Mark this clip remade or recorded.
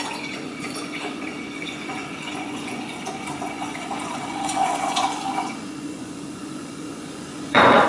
remade